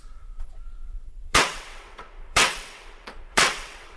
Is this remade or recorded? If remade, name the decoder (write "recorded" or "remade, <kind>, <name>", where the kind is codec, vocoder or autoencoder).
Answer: remade, vocoder, WaveNeXt